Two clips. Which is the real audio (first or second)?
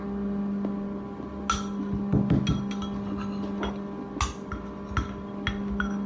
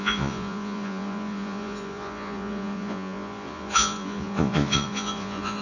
first